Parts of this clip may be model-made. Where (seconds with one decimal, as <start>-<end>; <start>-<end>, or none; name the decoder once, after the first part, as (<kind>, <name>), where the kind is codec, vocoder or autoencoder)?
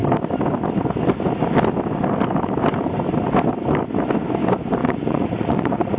4.8-6.0 (vocoder, Vocos)